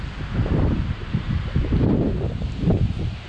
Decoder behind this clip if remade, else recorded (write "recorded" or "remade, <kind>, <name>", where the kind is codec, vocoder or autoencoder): recorded